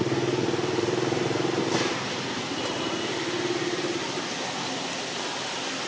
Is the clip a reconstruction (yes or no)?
no